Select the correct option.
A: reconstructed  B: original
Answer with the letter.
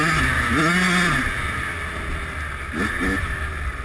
B